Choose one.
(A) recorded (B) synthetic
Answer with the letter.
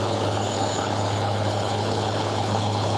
B